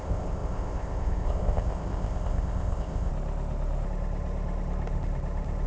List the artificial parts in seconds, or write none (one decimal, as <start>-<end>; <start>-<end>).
0.0-3.1